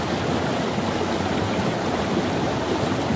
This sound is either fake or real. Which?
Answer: real